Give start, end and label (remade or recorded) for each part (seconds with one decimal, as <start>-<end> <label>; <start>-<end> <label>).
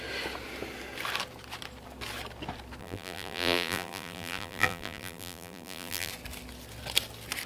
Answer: 0.0-2.8 recorded; 2.8-6.1 remade; 6.1-7.5 recorded